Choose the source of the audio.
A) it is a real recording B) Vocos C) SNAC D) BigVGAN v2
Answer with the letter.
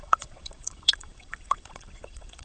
B